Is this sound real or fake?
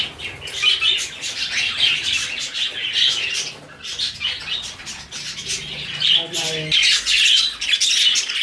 real